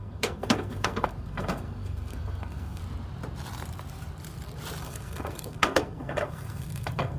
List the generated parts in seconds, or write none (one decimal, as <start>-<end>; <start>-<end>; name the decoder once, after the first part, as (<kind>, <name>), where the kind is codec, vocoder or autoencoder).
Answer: 0.0-2.8 (codec, SNAC); 4.8-7.2